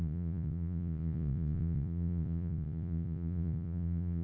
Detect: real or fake fake